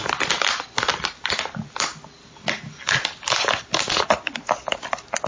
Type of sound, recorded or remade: recorded